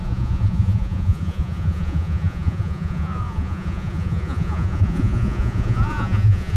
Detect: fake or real fake